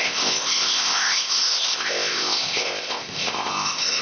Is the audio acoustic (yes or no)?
no